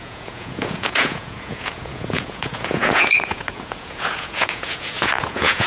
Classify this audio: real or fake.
fake